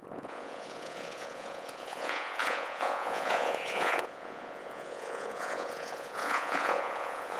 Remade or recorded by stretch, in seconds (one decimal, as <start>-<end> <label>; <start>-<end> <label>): 0.0-7.4 remade